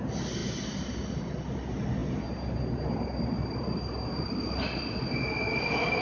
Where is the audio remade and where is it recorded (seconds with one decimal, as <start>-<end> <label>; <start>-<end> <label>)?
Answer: 0.0-6.0 recorded